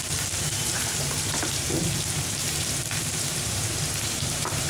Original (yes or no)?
no